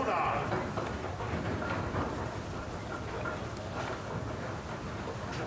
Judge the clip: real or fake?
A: real